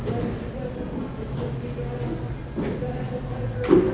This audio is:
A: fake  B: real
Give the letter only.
B